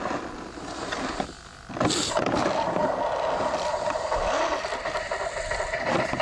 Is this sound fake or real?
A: real